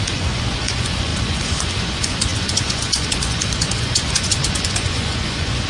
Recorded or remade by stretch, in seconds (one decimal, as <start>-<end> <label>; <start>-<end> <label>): 0.0-5.7 remade